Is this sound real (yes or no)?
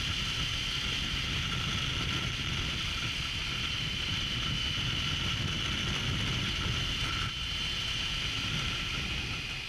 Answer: yes